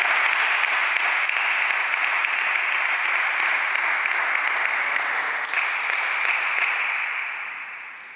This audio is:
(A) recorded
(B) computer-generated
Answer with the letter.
A